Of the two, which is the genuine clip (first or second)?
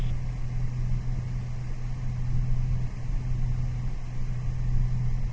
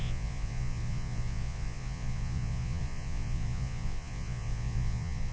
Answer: first